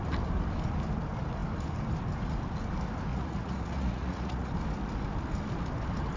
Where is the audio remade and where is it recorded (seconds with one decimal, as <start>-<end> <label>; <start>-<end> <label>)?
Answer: 0.0-3.1 recorded; 3.1-4.5 remade; 4.5-6.2 recorded